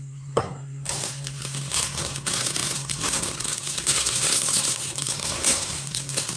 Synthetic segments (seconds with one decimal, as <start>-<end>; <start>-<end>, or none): 0.0-6.4